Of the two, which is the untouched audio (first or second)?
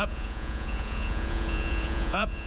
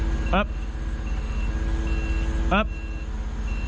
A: second